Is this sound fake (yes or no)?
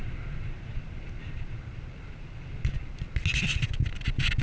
no